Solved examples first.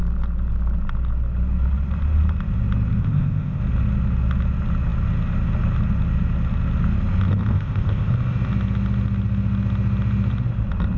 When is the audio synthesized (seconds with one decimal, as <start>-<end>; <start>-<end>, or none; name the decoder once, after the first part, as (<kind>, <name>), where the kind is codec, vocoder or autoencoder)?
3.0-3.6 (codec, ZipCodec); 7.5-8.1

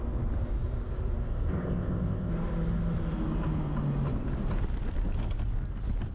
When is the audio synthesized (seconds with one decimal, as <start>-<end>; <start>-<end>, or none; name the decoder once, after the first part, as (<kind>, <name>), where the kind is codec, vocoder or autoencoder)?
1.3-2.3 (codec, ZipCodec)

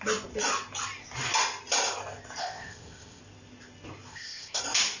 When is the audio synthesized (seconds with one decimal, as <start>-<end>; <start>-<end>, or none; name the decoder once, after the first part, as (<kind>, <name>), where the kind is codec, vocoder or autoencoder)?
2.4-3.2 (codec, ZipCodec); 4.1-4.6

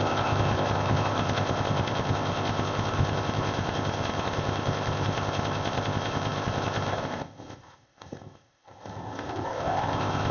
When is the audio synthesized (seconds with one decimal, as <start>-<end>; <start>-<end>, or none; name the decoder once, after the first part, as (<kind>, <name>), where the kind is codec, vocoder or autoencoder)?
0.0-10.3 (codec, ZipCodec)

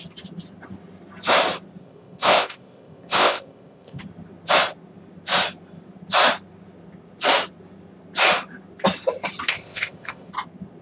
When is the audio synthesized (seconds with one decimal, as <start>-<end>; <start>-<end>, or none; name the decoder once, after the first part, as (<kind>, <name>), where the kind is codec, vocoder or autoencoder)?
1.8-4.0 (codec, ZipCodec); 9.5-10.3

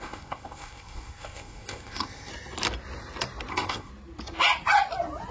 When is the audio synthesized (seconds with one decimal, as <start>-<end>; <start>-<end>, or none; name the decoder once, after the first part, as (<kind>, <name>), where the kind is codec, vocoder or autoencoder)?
0.0-2.3 (codec, ZipCodec); 3.5-3.9